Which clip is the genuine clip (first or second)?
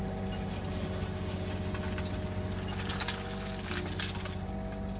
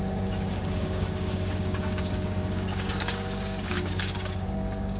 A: first